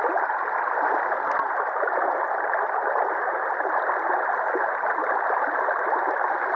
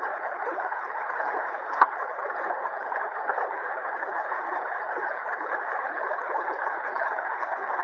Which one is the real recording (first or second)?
first